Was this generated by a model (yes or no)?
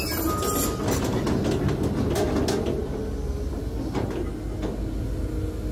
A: no